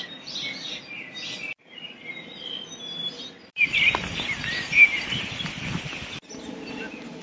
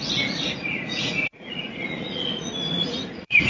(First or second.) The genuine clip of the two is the first